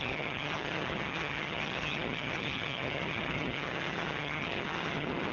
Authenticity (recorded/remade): remade